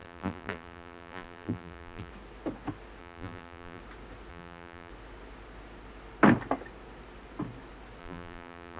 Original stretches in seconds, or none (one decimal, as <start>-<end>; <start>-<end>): 2.1-3.0; 3.8-4.3; 4.9-8.0